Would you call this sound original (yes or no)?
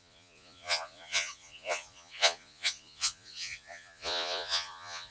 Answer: no